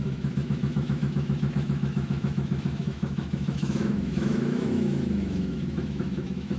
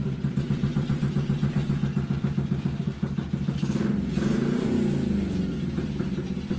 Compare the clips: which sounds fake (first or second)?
first